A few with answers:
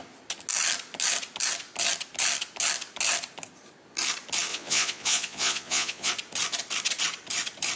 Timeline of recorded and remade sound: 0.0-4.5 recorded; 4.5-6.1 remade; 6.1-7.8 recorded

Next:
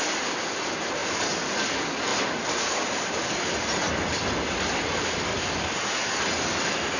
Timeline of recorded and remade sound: 0.0-1.0 recorded; 1.0-1.5 remade; 1.5-5.3 recorded; 5.3-6.2 remade; 6.2-7.0 recorded

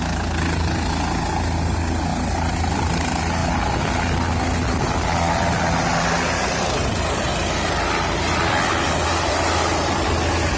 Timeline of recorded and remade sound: 0.0-10.6 recorded

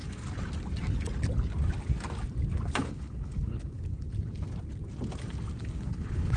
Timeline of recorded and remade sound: 0.0-2.8 recorded; 2.8-4.1 remade; 4.1-5.6 recorded; 5.6-6.4 remade

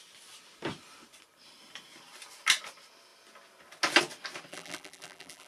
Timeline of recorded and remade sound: 0.0-4.5 recorded; 4.5-5.5 remade

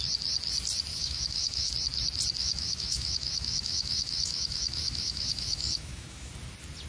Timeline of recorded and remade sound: 0.0-0.9 recorded; 0.9-1.7 remade; 1.7-2.4 recorded; 2.4-6.3 remade; 6.3-6.9 recorded